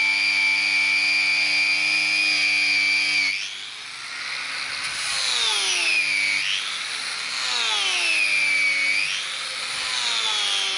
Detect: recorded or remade recorded